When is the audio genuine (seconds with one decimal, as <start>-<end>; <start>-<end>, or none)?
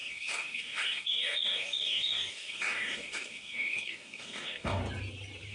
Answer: 4.8-5.5